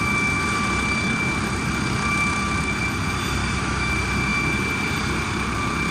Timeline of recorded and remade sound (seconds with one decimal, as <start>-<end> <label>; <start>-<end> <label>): 0.0-3.4 recorded; 3.4-3.9 remade; 3.9-5.9 recorded

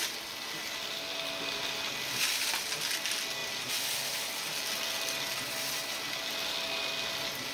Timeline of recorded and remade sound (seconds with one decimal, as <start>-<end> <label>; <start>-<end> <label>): 0.0-7.5 recorded

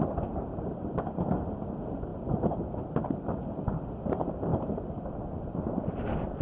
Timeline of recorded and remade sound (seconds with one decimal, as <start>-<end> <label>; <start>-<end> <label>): 0.0-6.4 recorded

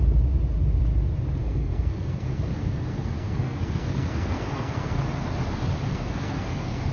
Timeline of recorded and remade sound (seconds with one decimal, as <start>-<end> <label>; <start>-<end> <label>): 0.0-1.4 recorded; 1.4-5.0 remade; 5.0-5.9 recorded; 5.9-6.9 remade